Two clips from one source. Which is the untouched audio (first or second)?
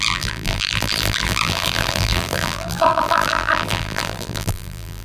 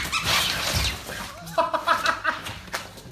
second